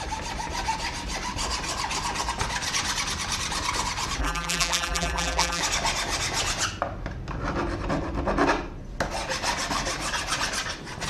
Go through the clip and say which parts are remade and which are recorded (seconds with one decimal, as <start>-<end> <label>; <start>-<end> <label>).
0.0-4.2 recorded; 4.2-5.6 remade; 5.6-11.1 recorded